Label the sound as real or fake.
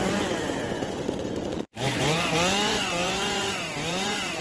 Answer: fake